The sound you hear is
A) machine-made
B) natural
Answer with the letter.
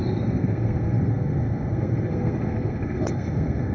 A